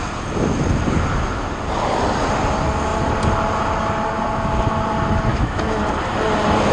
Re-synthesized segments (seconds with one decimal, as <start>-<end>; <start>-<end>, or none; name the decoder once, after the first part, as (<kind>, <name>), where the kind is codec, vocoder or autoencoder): 5.3-5.8 (autoencoder, DAC-VAE)